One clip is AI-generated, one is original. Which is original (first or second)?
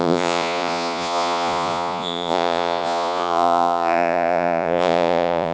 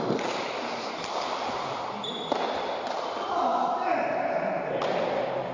second